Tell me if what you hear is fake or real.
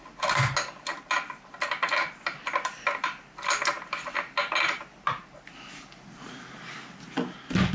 real